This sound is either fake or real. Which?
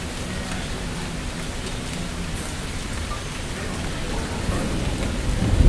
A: real